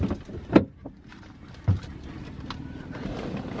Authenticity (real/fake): real